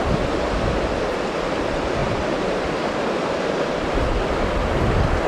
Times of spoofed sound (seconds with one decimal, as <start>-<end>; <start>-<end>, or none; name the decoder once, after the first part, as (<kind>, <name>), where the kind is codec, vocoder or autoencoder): none